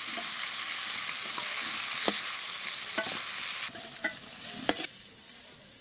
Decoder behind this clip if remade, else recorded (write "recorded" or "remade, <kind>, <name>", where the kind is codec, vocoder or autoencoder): recorded